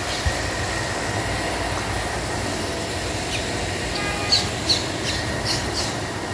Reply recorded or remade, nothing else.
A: recorded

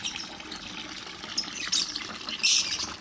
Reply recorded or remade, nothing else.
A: remade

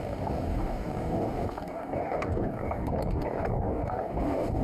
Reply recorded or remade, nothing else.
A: remade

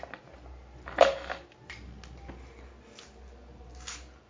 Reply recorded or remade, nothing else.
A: recorded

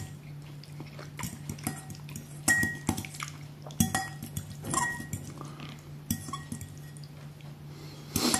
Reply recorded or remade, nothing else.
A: recorded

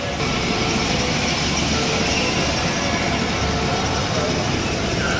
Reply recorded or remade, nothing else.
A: recorded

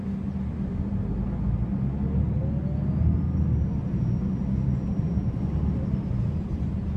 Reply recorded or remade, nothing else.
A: recorded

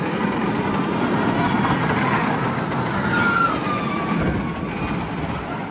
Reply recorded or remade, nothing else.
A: recorded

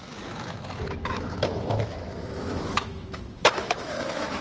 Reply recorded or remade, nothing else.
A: remade